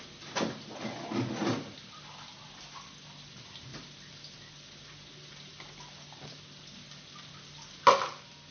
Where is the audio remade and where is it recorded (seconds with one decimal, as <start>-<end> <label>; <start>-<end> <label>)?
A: 0.0-8.5 recorded